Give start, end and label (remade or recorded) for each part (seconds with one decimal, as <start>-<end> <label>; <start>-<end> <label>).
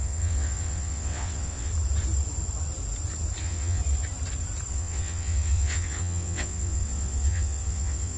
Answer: 0.0-1.7 remade; 1.7-3.4 recorded; 3.4-3.8 remade; 3.8-4.7 recorded; 4.7-8.2 remade